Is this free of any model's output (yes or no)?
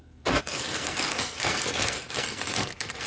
no